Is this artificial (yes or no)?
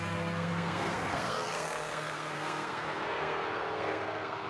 yes